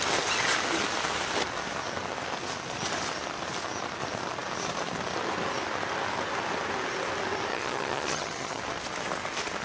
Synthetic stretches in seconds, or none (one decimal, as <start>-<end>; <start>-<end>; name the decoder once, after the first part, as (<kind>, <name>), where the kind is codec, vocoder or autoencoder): 7.5-8.6 (vocoder, HiFi-GAN)